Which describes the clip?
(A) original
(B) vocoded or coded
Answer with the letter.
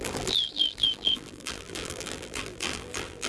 B